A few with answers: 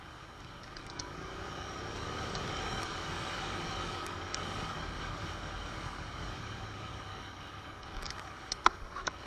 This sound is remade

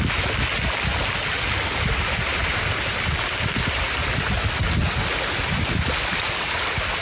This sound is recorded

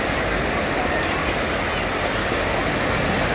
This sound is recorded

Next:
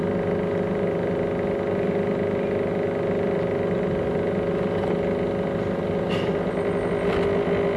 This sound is recorded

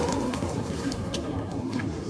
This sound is remade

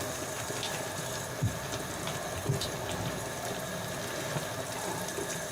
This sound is recorded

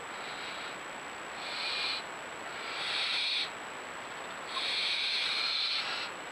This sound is recorded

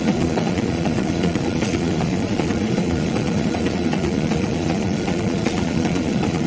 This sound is remade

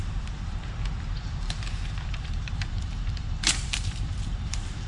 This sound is remade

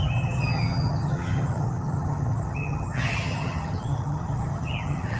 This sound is remade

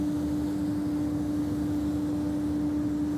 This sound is recorded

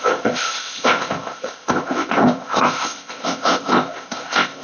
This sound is remade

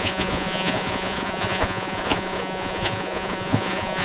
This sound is remade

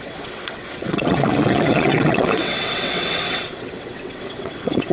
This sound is remade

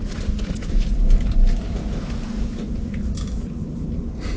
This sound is recorded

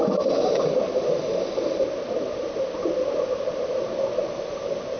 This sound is recorded